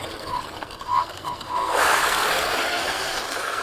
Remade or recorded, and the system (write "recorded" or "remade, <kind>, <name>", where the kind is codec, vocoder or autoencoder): remade, codec, SNAC